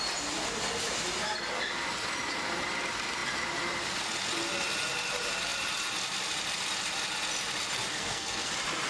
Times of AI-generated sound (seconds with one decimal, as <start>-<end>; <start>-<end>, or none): 7.9-8.5